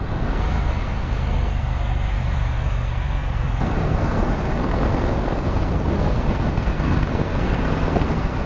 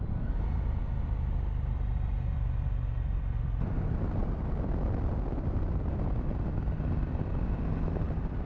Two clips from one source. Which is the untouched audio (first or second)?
second